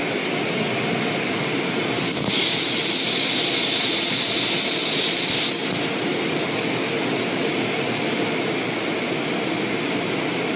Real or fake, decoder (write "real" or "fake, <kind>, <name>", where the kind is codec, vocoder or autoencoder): real